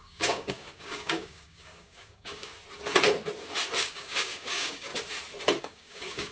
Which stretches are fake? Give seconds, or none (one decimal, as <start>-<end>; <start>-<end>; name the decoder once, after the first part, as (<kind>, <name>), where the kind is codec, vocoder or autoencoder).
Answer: 0.0-2.5 (codec, DAC); 3.8-4.9; 5.6-6.3